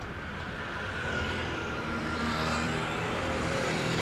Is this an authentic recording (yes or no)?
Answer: no